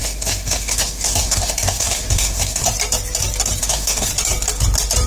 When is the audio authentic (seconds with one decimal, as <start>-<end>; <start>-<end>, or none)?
2.6-3.6; 4.1-5.1